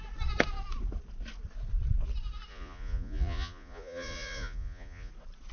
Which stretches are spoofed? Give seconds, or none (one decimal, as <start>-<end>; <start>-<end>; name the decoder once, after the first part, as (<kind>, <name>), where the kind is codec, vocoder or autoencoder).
2.5-5.1 (vocoder, Vocos)